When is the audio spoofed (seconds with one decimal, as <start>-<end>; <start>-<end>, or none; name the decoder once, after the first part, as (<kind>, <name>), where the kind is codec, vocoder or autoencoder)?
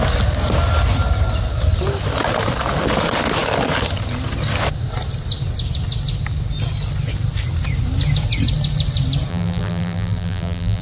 9.3-10.8 (vocoder, BigVGAN v2)